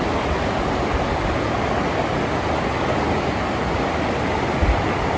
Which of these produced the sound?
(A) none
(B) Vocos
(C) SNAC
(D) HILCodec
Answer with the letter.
A